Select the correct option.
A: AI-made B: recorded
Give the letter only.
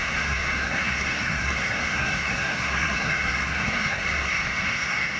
A